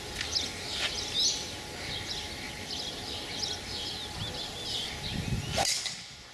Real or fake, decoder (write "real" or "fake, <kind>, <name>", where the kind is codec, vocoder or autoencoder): real